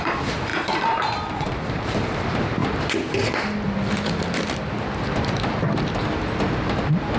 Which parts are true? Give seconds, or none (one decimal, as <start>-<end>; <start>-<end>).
2.6-6.5